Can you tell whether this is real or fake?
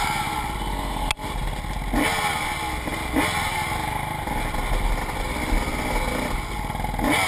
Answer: real